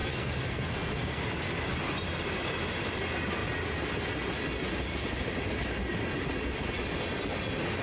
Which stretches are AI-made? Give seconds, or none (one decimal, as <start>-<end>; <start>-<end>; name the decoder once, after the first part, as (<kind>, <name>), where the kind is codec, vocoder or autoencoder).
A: 0.0-1.2 (codec, SNAC)